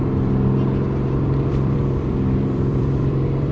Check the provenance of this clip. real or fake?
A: fake